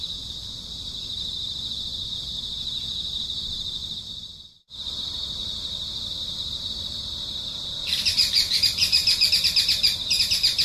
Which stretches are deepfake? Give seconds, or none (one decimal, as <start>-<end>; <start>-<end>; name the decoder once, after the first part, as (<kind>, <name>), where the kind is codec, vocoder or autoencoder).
5.4-7.0 (vocoder, BigVGAN v2); 7.8-9.3